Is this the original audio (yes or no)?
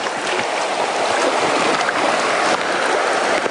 yes